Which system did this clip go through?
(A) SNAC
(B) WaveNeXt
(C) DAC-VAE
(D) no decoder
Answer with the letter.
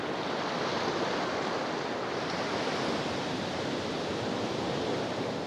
D